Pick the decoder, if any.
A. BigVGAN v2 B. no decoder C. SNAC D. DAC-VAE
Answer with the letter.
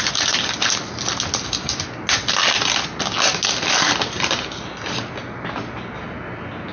B